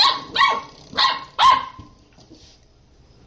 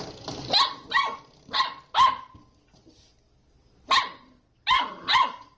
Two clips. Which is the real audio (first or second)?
second